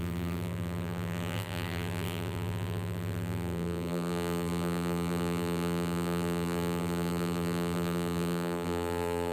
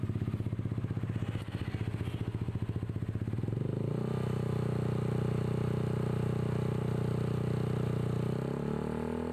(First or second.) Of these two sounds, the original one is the second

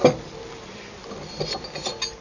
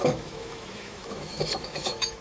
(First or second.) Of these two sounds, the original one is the first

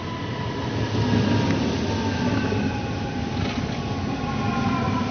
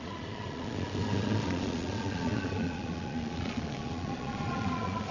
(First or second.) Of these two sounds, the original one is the first